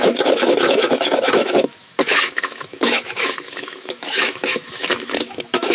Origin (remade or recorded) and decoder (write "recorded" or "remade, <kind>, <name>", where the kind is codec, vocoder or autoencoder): remade, autoencoder, DAC-VAE